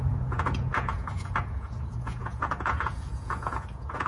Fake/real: fake